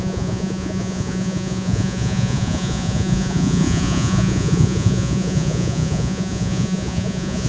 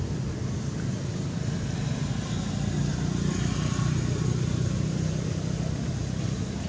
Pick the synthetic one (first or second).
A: first